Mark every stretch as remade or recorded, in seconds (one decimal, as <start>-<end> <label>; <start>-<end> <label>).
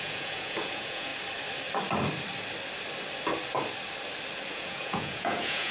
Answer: 0.0-1.1 remade; 1.1-4.5 recorded; 4.5-5.7 remade